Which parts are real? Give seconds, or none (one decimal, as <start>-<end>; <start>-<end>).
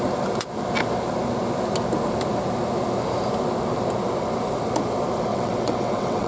0.0-5.3